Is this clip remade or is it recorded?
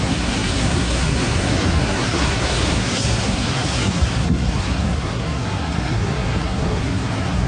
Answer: remade